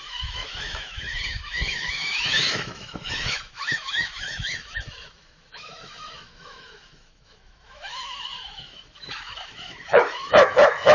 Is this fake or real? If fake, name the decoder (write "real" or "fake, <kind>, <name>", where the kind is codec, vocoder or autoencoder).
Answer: fake, autoencoder, DAC-VAE